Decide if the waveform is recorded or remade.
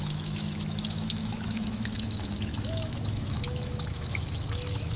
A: remade